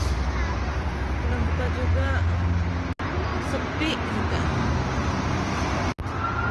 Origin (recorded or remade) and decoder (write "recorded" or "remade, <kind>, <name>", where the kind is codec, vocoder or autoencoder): recorded